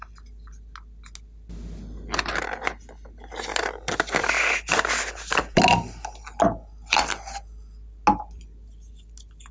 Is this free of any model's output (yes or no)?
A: yes